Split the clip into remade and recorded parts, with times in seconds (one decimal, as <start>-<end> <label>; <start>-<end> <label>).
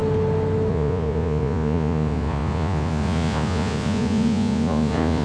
0.0-0.7 recorded; 0.7-5.2 remade